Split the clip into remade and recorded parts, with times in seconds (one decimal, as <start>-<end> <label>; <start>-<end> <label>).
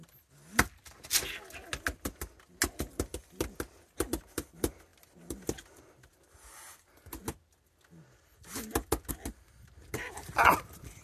0.0-11.0 recorded